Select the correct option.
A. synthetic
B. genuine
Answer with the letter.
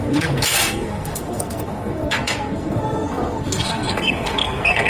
A